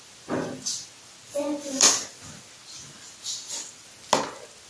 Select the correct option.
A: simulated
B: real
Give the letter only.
B